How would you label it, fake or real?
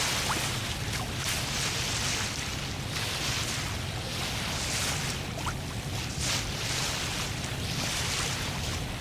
real